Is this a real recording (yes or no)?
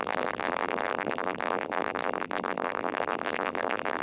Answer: no